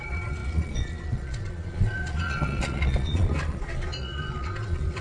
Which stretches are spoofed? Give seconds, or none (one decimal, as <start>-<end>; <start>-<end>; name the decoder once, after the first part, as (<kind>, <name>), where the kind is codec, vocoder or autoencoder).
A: 0.0-5.0 (vocoder, Vocos)